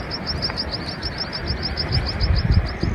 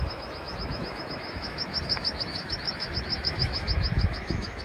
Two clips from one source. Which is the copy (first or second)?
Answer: second